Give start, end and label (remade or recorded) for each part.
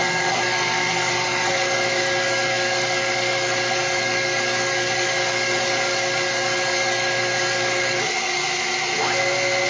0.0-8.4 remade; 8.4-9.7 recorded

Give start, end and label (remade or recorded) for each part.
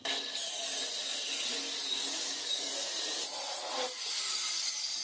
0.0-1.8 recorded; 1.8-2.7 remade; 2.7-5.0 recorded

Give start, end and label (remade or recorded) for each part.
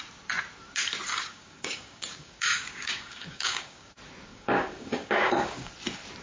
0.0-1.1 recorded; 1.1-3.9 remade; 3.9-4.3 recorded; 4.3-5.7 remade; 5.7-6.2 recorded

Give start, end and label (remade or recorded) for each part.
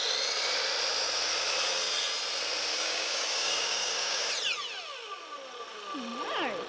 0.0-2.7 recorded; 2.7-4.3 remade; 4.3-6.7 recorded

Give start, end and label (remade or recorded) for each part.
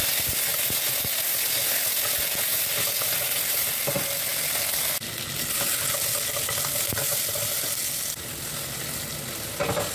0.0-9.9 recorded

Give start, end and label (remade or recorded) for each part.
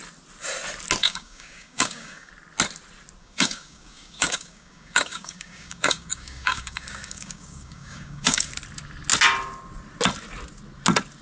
0.0-1.0 recorded; 1.0-2.3 remade; 2.3-3.2 recorded; 3.2-8.5 remade; 8.5-11.2 recorded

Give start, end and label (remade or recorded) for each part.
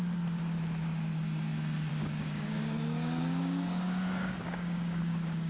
0.0-1.9 recorded; 1.9-5.5 remade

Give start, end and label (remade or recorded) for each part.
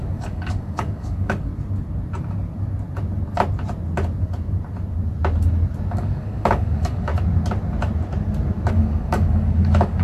0.0-1.5 remade; 1.5-5.9 recorded; 5.9-7.1 remade; 7.1-8.7 recorded; 8.7-10.0 remade